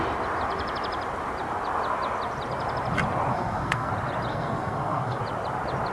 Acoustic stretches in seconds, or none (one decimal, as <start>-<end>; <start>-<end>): 0.0-3.3; 3.9-4.3; 5.2-5.9